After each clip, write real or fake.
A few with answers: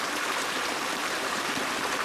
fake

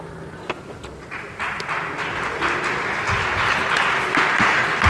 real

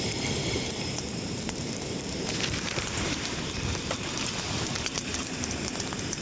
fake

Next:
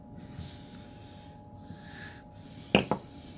real